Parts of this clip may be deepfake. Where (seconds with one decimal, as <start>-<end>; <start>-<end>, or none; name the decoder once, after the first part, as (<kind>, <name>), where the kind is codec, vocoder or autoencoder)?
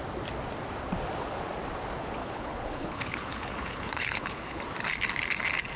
2.2-4.6 (codec, HILCodec)